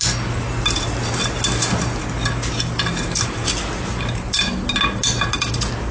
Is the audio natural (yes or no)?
yes